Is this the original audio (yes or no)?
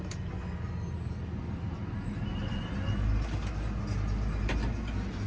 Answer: yes